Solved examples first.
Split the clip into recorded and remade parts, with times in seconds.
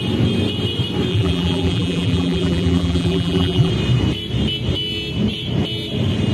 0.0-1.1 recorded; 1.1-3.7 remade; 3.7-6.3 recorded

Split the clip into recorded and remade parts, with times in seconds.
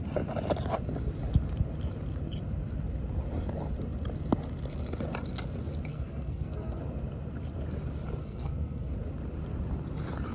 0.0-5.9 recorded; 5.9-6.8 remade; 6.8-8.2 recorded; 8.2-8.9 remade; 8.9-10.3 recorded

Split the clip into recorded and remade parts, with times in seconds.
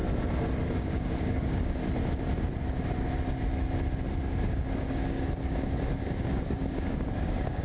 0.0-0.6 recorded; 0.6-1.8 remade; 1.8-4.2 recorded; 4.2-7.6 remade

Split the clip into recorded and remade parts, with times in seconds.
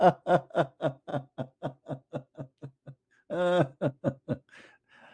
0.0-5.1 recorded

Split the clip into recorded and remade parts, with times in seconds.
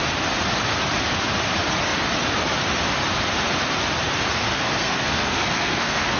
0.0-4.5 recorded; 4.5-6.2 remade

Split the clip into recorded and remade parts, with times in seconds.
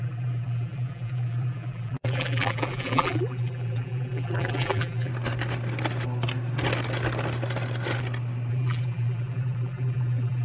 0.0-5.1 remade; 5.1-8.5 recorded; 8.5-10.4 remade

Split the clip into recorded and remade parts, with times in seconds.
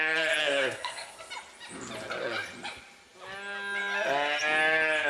0.0-0.4 recorded; 0.4-1.3 remade; 1.3-5.1 recorded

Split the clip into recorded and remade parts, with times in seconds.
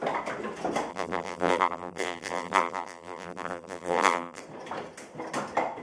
0.0-0.9 recorded; 0.9-4.4 remade; 4.4-5.8 recorded